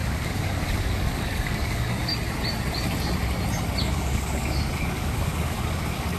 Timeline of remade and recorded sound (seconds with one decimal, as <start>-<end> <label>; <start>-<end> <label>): 0.0-2.1 remade; 2.1-3.8 recorded; 3.8-6.2 remade